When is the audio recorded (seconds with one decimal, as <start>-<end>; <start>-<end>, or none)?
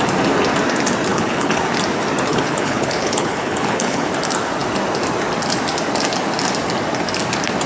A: 0.0-1.1; 1.6-2.3; 4.1-7.7